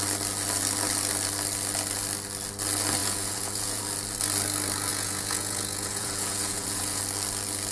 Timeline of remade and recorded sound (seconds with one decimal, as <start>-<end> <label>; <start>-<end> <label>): 0.0-3.0 recorded; 3.0-3.8 remade; 3.8-4.9 recorded; 4.9-7.0 remade; 7.0-7.7 recorded